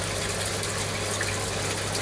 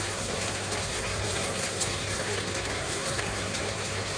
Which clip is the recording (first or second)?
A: first